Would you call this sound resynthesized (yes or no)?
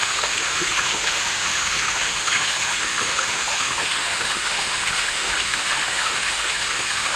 yes